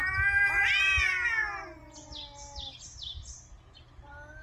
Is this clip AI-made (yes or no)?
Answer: no